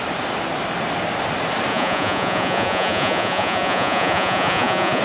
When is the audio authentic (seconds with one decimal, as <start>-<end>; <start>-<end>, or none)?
0.0-1.7